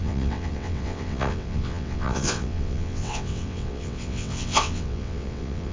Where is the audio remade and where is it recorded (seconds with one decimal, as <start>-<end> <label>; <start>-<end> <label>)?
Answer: 0.0-5.7 remade